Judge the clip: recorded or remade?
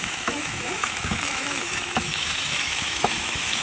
remade